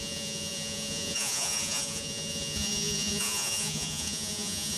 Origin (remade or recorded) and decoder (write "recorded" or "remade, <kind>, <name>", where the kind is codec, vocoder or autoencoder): remade, vocoder, Vocos